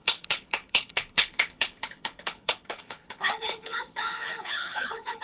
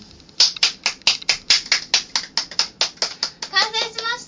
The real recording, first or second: second